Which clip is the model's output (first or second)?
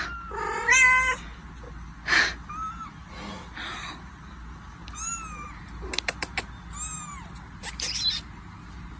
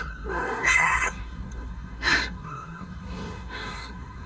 second